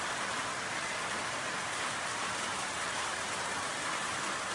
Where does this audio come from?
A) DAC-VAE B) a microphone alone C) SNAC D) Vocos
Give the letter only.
B